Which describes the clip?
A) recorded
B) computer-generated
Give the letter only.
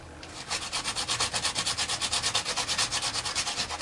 A